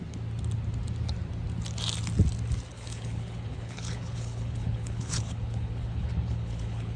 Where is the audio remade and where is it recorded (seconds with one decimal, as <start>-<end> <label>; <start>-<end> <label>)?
0.0-2.7 recorded; 2.7-7.0 remade